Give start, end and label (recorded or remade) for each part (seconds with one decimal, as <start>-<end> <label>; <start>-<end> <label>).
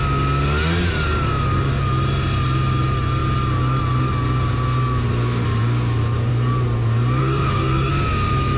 0.0-7.2 recorded; 7.2-7.9 remade; 7.9-8.6 recorded